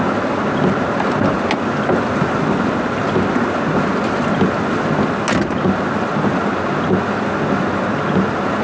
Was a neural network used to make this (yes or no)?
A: no